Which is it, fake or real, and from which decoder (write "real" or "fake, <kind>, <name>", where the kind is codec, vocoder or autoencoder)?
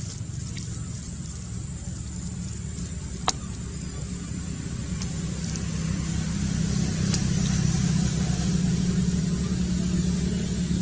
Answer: real